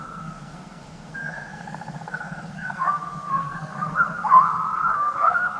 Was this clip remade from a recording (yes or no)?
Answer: yes